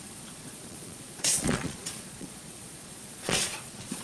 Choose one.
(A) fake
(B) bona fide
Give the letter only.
A